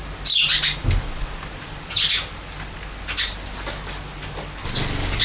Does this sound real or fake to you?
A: real